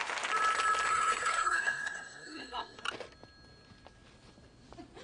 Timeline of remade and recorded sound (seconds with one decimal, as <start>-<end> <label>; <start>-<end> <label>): 0.0-0.9 recorded; 0.9-2.8 remade; 2.8-5.0 recorded